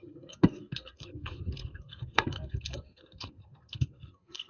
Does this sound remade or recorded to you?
remade